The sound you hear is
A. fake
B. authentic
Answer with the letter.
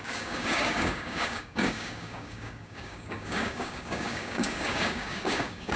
A